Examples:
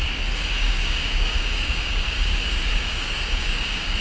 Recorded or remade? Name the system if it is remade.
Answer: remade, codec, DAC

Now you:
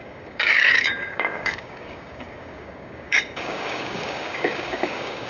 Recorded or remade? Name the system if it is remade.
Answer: remade, codec, DAC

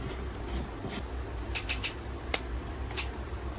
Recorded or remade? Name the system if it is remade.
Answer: recorded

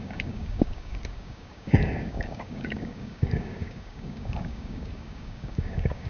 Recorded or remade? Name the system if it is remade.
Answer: remade, codec, DAC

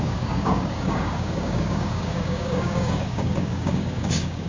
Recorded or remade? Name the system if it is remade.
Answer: remade, codec, DAC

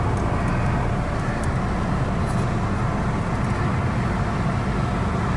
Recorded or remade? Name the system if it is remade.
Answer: recorded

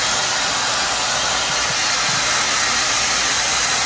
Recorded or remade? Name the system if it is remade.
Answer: recorded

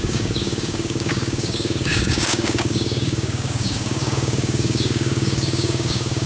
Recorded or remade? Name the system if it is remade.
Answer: remade, codec, DAC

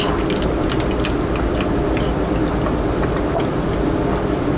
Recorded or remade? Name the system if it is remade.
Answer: recorded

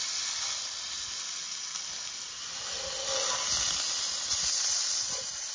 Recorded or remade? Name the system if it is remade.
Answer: recorded